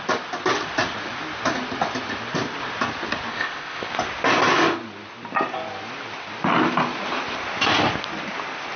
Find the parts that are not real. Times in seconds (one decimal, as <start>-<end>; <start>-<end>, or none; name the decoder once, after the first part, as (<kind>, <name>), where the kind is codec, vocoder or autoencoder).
3.3-3.9 (codec, ZipCodec)